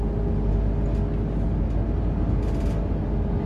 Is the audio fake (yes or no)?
no